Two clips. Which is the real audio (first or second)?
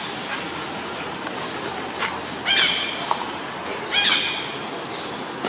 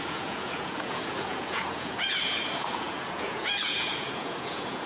first